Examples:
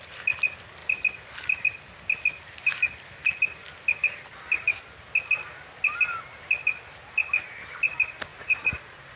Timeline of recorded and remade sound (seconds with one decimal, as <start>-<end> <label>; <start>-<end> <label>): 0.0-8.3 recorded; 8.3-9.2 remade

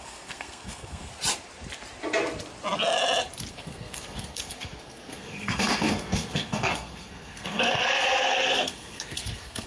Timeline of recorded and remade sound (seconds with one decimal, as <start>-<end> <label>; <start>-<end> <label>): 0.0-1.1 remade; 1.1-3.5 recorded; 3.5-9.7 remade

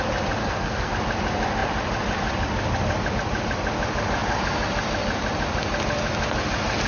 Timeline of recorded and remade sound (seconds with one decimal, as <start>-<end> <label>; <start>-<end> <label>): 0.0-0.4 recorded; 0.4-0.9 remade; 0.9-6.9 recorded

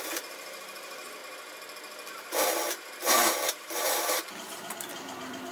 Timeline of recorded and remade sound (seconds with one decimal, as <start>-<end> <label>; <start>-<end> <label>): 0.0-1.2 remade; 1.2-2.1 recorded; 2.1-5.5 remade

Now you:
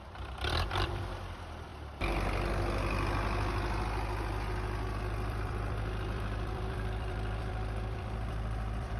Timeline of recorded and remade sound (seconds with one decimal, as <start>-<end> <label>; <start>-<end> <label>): 0.0-1.7 remade; 1.7-5.3 recorded; 5.3-9.0 remade